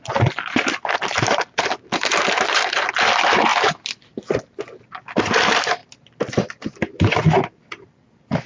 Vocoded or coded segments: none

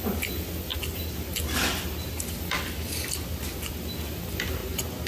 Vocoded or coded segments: none

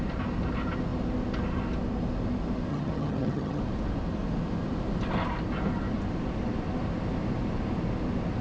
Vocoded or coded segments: 2.7-3.6 (vocoder, HiFi-GAN)

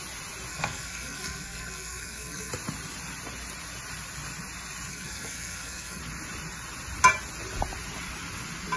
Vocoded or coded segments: 0.5-2.5 (codec, SNAC); 4.9-6.0

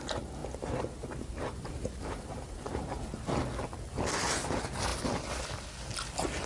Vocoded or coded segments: 0.4-3.0 (vocoder, BigVGAN v2)

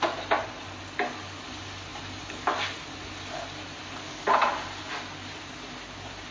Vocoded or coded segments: none

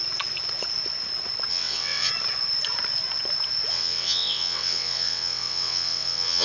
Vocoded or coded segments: 1.5-2.1 (vocoder, WaveNeXt); 3.7-6.4

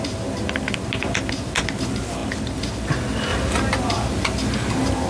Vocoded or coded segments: none